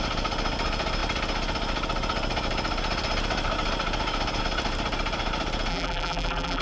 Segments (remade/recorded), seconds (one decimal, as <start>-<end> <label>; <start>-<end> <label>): 0.0-5.7 recorded; 5.7-6.6 remade